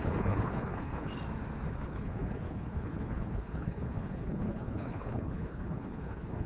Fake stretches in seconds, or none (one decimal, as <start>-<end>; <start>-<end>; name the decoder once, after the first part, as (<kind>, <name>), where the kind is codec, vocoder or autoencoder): 0.0-1.1 (codec, HILCodec); 1.7-6.5